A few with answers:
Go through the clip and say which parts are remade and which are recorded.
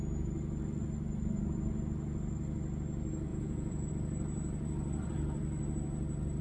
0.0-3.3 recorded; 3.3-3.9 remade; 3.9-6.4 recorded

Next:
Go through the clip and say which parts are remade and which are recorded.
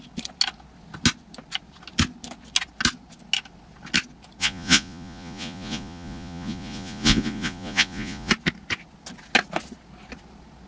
0.0-4.4 recorded; 4.4-8.3 remade; 8.3-10.7 recorded